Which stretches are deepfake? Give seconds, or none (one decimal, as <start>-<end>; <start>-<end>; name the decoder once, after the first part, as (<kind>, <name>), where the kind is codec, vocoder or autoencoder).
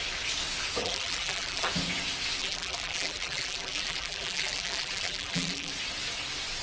0.8-1.7 (vocoder, BigVGAN v2); 2.4-5.7